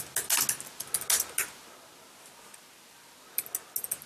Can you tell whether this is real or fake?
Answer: real